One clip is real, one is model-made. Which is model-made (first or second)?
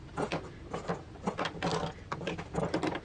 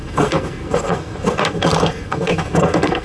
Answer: second